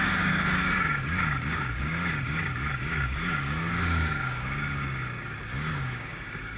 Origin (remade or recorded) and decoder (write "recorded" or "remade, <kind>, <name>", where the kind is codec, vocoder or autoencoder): remade, codec, DAC